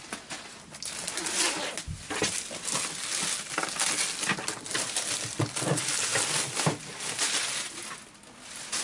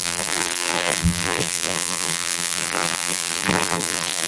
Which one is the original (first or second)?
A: first